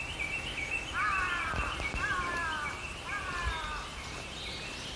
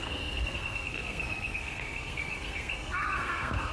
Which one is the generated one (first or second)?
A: second